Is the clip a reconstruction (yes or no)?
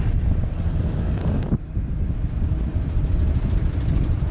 yes